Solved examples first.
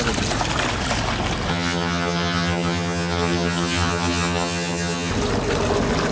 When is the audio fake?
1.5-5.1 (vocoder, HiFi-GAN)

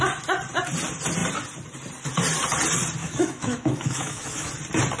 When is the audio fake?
3.0-4.5 (autoencoder, DAC-VAE)

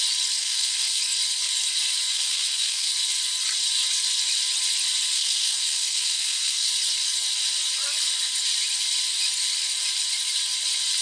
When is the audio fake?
0.4-1.0 (codec, SNAC); 2.1-2.9; 5.1-6.7

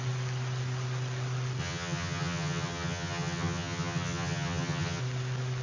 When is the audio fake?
1.6-5.0 (vocoder, HiFi-GAN)